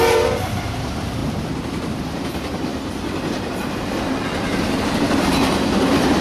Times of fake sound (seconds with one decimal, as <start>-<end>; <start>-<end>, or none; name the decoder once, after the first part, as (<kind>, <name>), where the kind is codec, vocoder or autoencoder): 0.0-1.2 (vocoder, BigVGAN v2); 1.9-2.7; 4.9-6.2